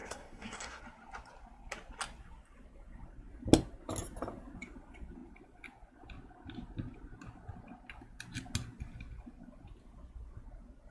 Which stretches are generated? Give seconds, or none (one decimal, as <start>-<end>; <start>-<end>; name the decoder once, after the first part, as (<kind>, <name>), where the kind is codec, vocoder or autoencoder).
0.0-0.8 (codec, SNAC)

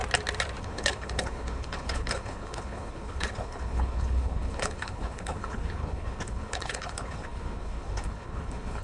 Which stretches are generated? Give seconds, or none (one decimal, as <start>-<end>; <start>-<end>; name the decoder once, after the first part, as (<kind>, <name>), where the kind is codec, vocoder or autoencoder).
0.6-8.8 (codec, HILCodec)

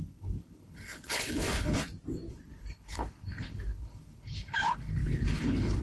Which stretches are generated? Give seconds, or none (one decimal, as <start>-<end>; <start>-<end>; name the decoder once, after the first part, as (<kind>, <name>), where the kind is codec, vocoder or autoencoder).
0.0-1.8 (codec, HILCodec); 2.3-5.8

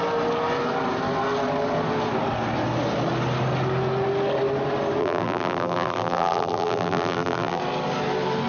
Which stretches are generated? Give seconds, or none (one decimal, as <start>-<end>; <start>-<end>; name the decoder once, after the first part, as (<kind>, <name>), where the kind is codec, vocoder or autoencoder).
5.0-7.6 (vocoder, BigVGAN v2)